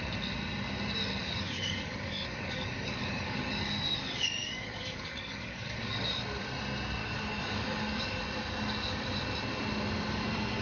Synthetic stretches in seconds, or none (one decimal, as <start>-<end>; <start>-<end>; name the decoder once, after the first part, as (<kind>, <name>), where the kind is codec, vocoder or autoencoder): 1.2-6.1 (codec, DAC); 7.0-8.2